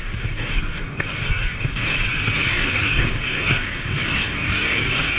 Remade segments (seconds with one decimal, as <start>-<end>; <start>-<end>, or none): 0.0-5.2